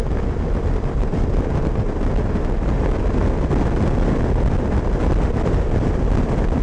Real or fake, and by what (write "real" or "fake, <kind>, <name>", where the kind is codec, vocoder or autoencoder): real